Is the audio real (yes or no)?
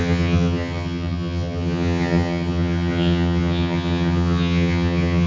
no